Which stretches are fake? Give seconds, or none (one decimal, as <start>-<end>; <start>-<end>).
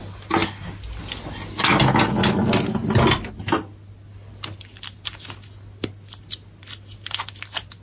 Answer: none